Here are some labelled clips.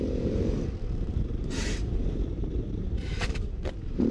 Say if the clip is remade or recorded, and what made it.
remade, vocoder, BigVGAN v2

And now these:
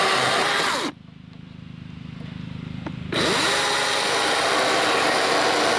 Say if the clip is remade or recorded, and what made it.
recorded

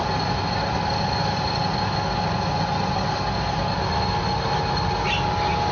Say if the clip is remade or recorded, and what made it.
recorded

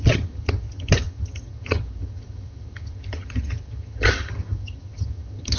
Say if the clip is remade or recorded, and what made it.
remade, vocoder, HiFi-GAN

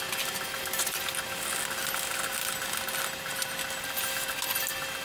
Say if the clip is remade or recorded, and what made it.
recorded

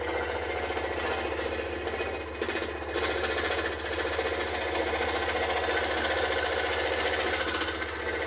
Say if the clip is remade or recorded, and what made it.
recorded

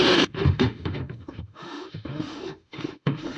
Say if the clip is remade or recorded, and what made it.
remade, autoencoder, DAC-VAE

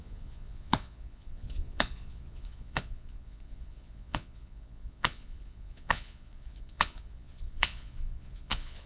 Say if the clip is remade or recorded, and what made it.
remade, vocoder, Vocos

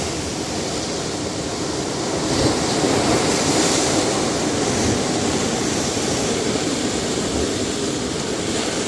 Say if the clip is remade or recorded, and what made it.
recorded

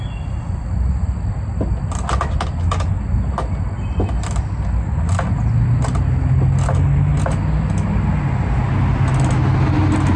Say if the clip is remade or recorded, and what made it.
recorded